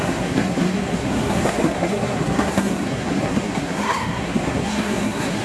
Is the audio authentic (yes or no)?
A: no